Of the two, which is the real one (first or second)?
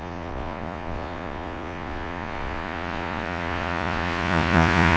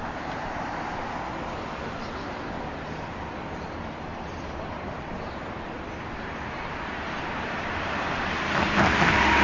second